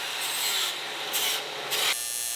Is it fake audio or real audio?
real